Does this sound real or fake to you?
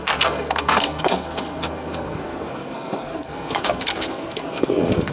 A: fake